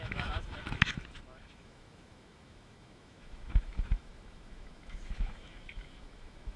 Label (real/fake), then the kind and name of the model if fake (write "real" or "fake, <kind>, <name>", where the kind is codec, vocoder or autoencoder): fake, autoencoder, DAC-VAE